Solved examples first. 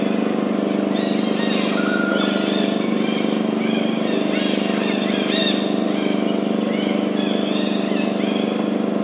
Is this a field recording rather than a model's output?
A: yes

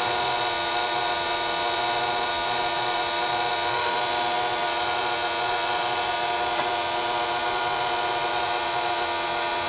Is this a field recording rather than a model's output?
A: no